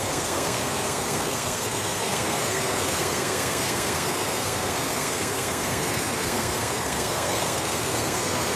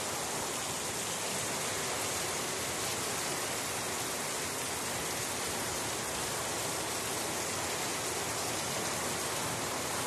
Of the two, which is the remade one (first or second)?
first